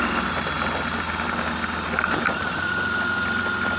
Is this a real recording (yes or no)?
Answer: yes